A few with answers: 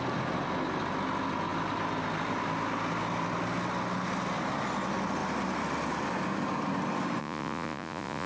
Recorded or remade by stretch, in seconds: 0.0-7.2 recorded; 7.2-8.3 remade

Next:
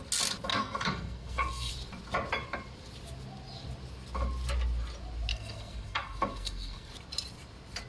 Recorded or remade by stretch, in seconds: 0.0-0.5 recorded; 0.5-1.7 remade; 1.7-5.3 recorded; 5.3-6.9 remade; 6.9-7.9 recorded

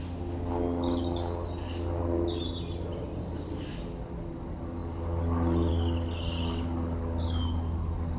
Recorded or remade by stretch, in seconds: 0.0-8.2 recorded

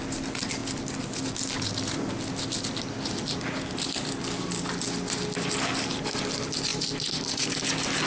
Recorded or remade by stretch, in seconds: 0.0-8.1 recorded

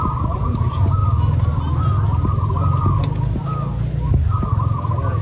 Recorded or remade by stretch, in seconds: 0.0-5.2 recorded

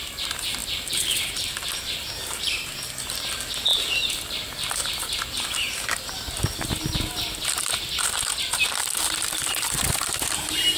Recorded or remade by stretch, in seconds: 0.0-3.7 remade; 3.7-8.4 recorded; 8.4-10.8 remade

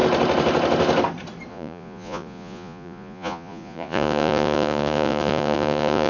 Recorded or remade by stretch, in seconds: 0.0-1.5 recorded; 1.5-6.1 remade